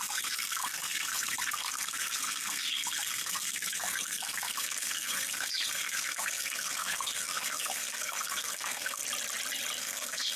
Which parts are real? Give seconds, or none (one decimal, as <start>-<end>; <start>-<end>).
9.0-9.8